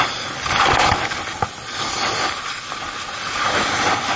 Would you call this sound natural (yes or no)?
yes